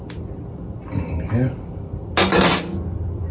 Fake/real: real